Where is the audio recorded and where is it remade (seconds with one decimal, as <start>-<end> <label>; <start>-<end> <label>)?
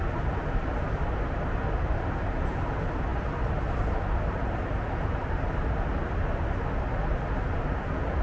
0.0-8.2 recorded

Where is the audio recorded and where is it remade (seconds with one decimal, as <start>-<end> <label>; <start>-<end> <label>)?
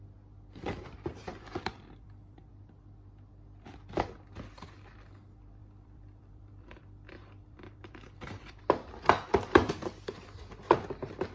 0.0-1.3 recorded; 1.3-2.5 remade; 2.5-5.6 recorded; 5.6-8.6 remade; 8.6-11.3 recorded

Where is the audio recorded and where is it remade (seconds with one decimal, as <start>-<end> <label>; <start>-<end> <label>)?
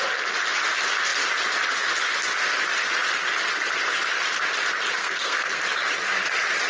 0.0-5.0 recorded; 5.0-5.6 remade; 5.6-6.7 recorded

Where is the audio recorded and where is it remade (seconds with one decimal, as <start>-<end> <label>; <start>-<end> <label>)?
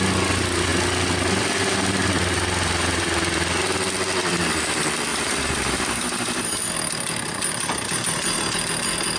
0.0-2.3 recorded; 2.3-3.4 remade; 3.4-5.1 recorded; 5.1-6.7 remade; 6.7-9.2 recorded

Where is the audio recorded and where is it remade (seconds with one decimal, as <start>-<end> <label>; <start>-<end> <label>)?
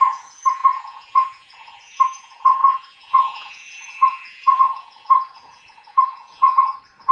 0.0-7.1 remade